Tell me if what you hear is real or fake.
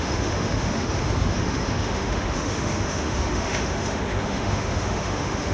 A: fake